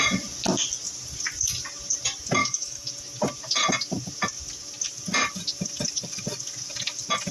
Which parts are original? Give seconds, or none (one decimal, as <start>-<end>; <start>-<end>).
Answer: 0.0-2.4; 2.9-7.3